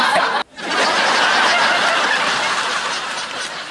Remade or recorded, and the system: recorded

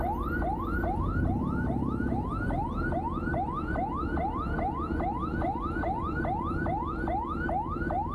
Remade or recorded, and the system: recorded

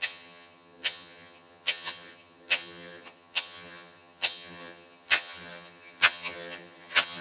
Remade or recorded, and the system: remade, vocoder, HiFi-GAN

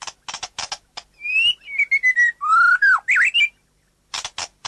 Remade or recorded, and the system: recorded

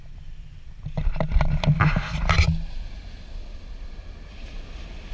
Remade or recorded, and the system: recorded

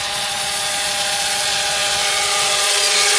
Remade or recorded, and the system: remade, vocoder, Vocos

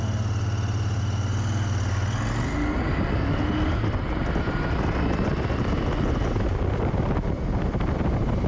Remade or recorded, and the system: recorded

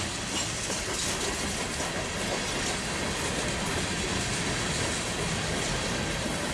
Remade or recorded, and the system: recorded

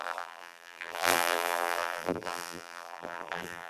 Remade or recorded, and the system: remade, vocoder, BigVGAN v2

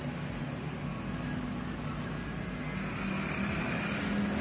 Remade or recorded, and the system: recorded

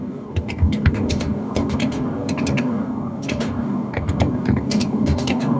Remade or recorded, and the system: remade, codec, DAC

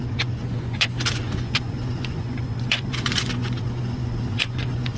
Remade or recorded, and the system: remade, vocoder, Vocos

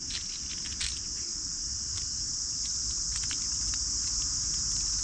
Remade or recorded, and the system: recorded